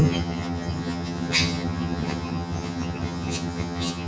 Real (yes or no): no